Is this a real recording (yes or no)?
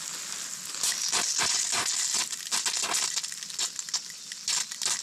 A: yes